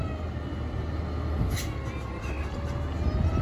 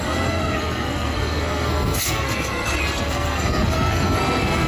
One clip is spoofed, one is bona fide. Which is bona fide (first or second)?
first